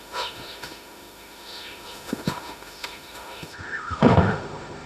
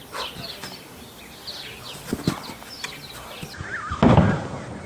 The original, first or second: second